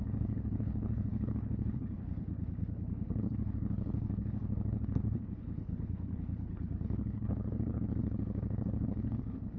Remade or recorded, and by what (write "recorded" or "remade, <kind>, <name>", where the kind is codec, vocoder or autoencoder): remade, codec, HILCodec